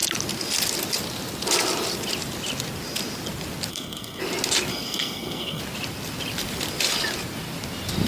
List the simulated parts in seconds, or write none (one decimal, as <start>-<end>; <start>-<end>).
3.7-4.2; 4.7-5.6